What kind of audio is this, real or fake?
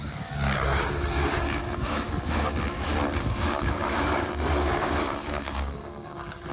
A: fake